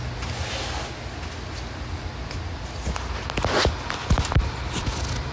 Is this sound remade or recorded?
recorded